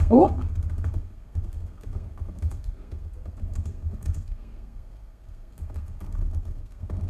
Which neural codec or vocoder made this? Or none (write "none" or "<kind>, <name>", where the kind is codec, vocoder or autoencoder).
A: codec, SNAC